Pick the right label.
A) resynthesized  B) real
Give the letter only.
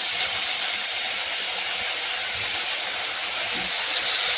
B